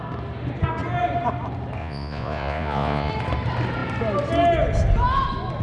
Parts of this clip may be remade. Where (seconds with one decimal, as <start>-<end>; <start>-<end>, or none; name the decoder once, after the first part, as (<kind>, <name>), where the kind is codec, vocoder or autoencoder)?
1.8-3.1 (vocoder, Vocos)